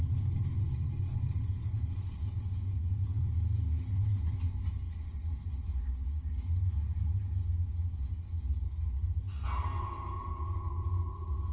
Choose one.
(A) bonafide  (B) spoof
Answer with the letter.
A